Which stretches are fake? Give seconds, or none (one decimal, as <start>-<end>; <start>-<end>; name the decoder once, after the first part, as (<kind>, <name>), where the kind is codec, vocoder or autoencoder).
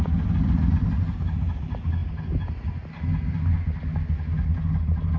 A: none